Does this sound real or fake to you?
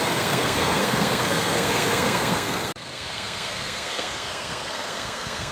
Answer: fake